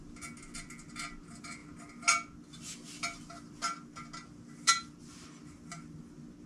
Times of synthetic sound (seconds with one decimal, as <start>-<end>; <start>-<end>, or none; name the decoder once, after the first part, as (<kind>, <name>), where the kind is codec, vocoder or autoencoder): none